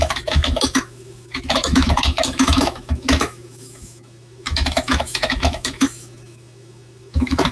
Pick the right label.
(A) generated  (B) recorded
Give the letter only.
A